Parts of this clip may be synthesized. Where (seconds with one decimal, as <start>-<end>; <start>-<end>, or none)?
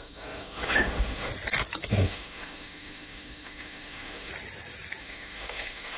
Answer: 0.0-1.3; 1.9-4.3; 5.0-6.0